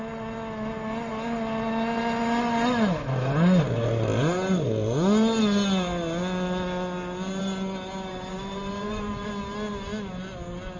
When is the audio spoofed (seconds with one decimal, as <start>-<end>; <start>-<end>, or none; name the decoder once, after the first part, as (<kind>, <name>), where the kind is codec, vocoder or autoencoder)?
8.1-9.3 (vocoder, BigVGAN v2)